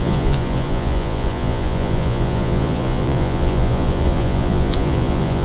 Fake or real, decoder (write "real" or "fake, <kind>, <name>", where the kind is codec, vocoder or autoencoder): fake, vocoder, Vocos